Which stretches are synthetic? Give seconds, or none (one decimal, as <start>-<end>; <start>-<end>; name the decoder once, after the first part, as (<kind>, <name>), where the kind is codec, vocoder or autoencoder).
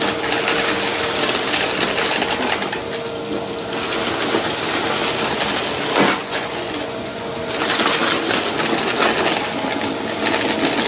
6.2-7.3 (vocoder, Vocos)